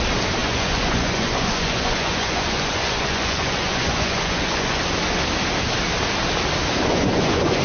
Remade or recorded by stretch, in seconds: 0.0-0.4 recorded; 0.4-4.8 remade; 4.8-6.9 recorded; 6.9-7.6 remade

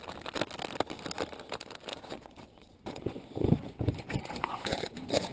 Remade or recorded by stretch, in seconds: 0.0-1.9 recorded; 1.9-5.3 remade

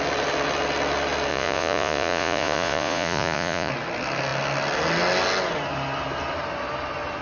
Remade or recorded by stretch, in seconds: 0.0-1.3 recorded; 1.3-3.7 remade; 3.7-7.2 recorded

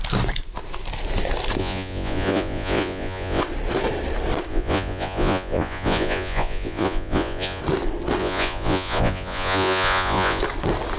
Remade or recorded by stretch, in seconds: 0.0-1.6 recorded; 1.6-3.4 remade; 3.4-4.5 recorded; 4.5-7.6 remade; 7.6-8.2 recorded; 8.2-10.4 remade; 10.4-11.0 recorded

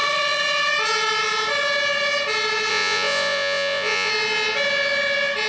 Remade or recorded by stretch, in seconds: 0.0-2.7 recorded; 2.7-4.1 remade; 4.1-5.5 recorded

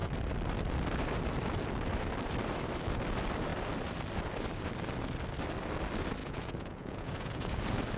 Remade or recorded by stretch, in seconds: 0.0-6.2 recorded; 6.2-7.6 remade; 7.6-8.0 recorded